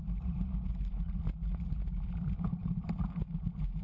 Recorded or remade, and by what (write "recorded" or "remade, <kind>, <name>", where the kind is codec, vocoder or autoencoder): recorded